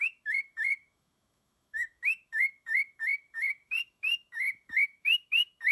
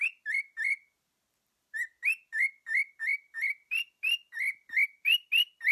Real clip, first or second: second